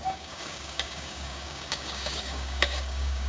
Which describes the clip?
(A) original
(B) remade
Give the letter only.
B